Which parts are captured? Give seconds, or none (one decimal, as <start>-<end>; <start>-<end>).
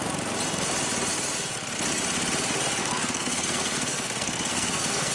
0.0-2.8